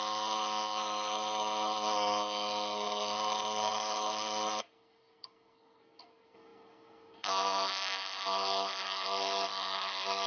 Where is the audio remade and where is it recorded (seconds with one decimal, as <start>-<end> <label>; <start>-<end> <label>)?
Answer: 0.0-10.3 remade